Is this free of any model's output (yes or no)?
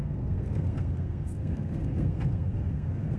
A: no